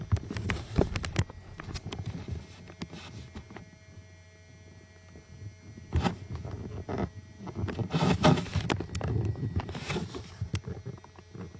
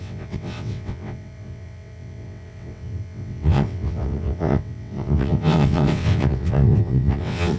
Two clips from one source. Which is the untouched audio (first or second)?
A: first